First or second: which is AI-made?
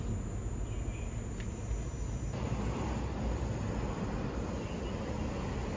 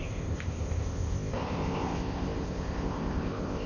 second